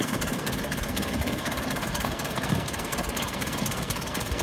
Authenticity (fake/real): fake